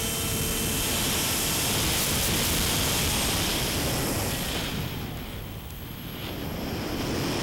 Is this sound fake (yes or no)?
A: no